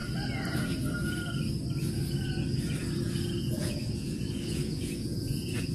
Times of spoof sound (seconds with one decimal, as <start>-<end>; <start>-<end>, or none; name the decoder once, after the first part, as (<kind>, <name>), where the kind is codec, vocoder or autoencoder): 3.4-5.7 (vocoder, Vocos)